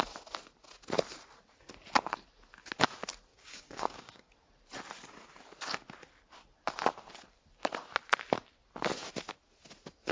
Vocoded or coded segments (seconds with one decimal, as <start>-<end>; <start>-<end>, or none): 3.3-4.3